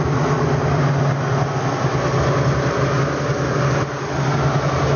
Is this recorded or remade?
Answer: recorded